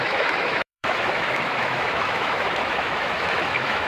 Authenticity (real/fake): fake